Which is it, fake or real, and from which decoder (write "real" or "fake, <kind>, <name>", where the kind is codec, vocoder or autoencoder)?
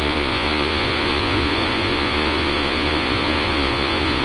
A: fake, vocoder, Vocos